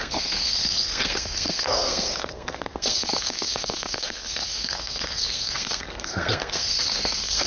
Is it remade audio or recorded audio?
remade